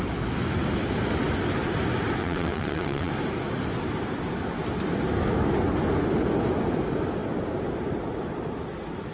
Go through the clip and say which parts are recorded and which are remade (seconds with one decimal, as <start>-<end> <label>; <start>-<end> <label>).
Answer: 0.0-2.2 recorded; 2.2-3.1 remade; 3.1-9.1 recorded